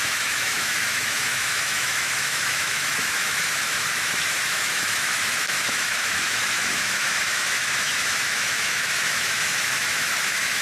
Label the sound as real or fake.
fake